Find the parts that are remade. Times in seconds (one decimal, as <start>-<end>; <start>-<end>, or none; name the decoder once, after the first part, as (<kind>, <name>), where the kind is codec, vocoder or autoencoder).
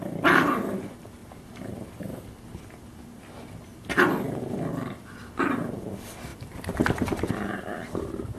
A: 6.3-7.3 (vocoder, BigVGAN v2)